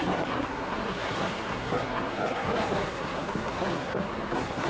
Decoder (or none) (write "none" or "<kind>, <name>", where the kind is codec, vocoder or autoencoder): codec, SNAC